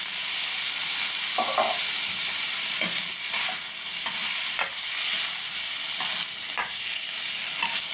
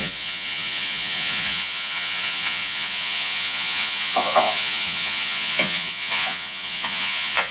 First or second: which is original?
first